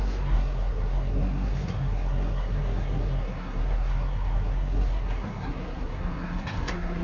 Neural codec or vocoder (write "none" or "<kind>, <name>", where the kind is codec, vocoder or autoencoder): codec, SNAC